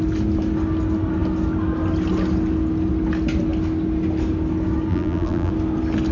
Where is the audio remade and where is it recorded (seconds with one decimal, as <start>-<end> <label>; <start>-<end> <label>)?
0.0-4.9 recorded; 4.9-5.5 remade; 5.5-6.1 recorded